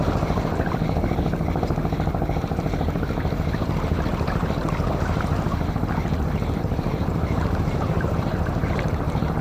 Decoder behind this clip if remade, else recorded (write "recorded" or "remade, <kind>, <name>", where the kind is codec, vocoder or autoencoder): remade, vocoder, BigVGAN v2